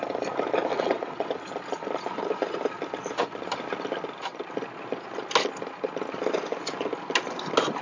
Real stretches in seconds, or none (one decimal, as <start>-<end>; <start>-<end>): 0.0-0.7; 1.3-7.8